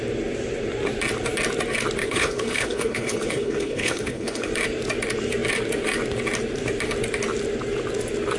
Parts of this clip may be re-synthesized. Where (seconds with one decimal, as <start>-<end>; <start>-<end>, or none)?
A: 2.0-4.5